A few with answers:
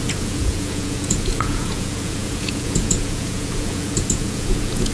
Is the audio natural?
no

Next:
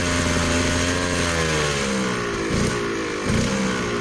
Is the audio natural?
yes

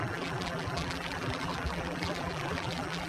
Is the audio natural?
no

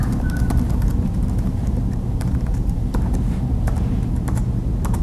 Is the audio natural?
no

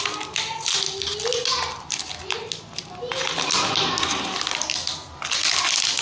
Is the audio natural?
yes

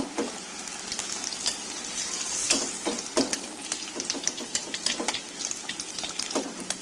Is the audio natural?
yes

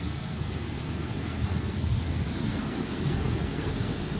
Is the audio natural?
no